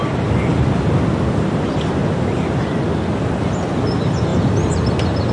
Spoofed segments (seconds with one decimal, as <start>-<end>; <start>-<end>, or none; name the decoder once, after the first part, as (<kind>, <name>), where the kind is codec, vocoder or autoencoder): none